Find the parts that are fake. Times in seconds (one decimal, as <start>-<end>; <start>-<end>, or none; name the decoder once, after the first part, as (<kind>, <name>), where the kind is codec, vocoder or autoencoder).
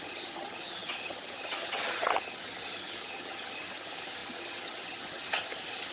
0.0-5.9 (vocoder, HiFi-GAN)